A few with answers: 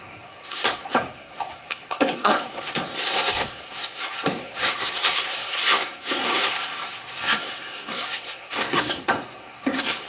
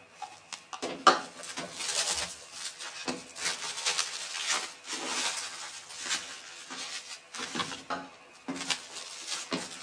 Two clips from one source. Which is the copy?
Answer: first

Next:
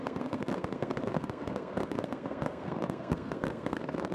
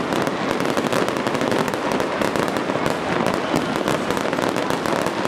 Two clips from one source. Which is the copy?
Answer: first